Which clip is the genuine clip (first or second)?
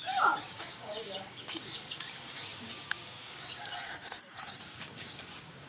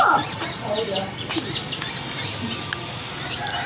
second